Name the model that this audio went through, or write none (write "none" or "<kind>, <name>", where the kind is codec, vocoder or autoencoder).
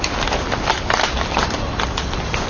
none